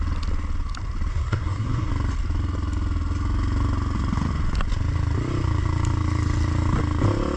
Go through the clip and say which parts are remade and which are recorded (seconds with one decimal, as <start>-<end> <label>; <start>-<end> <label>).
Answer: 0.0-1.1 recorded; 1.1-1.9 remade; 1.9-7.4 recorded